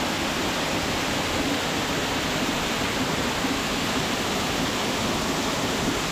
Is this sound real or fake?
real